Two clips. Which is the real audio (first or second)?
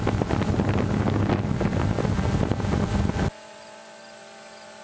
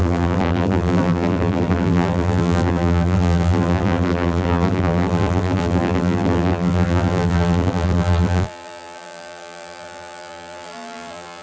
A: first